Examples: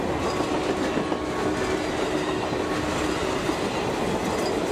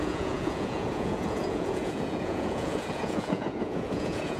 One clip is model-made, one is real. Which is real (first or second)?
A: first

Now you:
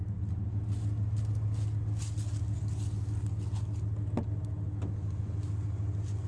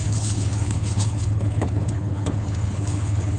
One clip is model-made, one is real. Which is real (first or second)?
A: first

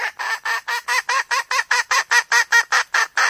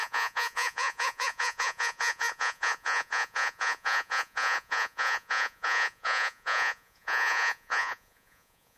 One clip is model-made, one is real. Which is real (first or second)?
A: first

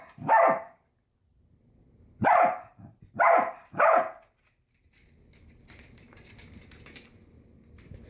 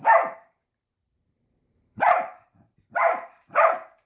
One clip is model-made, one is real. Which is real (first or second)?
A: first